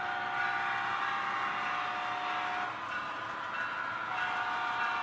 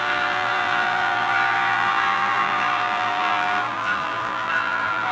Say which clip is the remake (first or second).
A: second